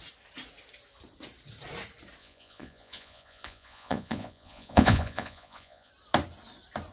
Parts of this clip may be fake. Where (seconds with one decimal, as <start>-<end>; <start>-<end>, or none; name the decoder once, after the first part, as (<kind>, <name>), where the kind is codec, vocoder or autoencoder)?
2.2-5.9 (vocoder, Vocos)